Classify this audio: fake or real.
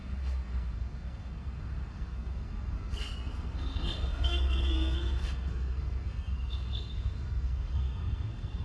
fake